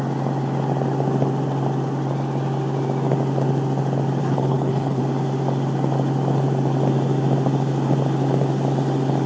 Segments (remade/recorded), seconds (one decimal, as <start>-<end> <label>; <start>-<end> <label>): 0.0-4.2 recorded; 4.2-5.0 remade; 5.0-9.3 recorded